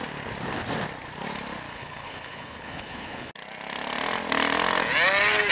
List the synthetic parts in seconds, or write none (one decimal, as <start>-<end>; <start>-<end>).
1.7-3.3